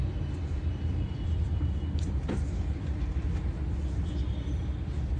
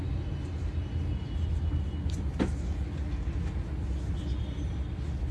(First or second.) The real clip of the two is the second